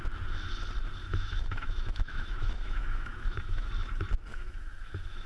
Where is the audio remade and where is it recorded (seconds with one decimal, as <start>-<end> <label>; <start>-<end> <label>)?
0.0-1.0 recorded; 1.0-3.7 remade; 3.7-4.3 recorded; 4.3-5.3 remade